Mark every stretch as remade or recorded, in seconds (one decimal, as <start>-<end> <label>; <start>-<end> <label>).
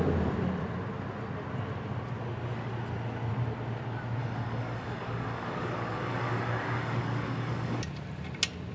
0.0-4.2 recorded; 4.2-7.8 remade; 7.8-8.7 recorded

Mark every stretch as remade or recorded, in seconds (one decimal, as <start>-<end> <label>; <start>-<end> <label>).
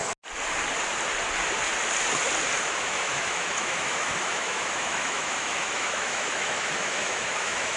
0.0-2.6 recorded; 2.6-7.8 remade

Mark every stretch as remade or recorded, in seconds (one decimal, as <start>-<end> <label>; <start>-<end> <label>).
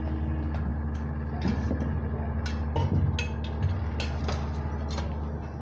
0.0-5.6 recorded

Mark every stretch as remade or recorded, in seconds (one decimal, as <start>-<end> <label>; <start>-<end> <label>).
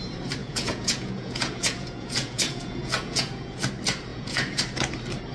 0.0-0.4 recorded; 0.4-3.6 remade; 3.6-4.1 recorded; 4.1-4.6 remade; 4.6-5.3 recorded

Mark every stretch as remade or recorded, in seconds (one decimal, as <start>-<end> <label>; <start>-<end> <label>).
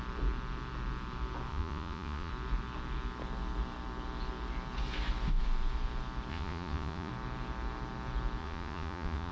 0.0-1.5 recorded; 1.5-2.3 remade; 2.3-6.3 recorded; 6.3-7.1 remade; 7.1-8.4 recorded; 8.4-9.3 remade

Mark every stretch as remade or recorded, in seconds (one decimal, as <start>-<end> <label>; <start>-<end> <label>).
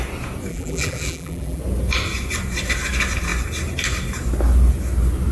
0.0-0.5 recorded; 0.5-1.6 remade; 1.6-5.3 recorded